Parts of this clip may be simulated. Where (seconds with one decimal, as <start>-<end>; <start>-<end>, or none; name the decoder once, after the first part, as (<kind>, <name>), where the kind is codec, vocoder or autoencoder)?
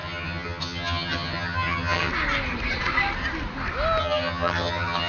0.0-2.1 (vocoder, HiFi-GAN); 4.0-5.1